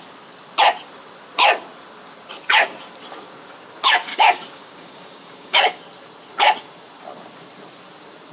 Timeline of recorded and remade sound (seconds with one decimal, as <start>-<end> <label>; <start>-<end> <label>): 0.0-4.1 recorded; 4.1-5.8 remade; 5.8-8.3 recorded